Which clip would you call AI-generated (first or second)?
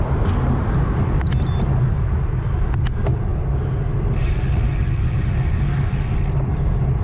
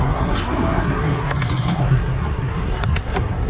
second